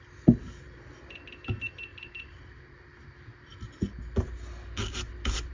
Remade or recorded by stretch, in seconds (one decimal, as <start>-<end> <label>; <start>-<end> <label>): 0.0-1.9 recorded; 1.9-2.6 remade; 2.6-5.5 recorded